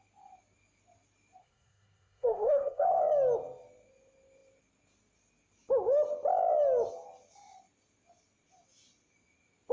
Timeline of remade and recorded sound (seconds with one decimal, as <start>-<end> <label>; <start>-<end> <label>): 0.0-1.4 recorded; 1.4-3.0 remade; 3.0-9.7 recorded